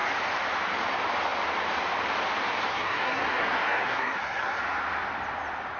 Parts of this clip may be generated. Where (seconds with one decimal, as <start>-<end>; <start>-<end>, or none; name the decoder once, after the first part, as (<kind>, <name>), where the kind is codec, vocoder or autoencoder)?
2.7-4.6 (codec, SNAC)